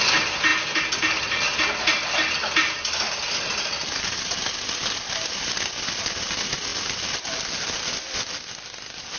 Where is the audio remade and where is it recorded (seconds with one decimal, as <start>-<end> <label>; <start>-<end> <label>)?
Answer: 0.0-9.2 recorded